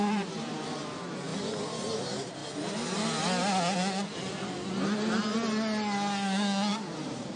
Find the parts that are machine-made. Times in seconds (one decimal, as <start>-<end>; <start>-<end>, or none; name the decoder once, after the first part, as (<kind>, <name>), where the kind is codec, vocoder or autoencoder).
0.0-1.3 (vocoder, BigVGAN v2); 1.9-2.4; 6.7-7.4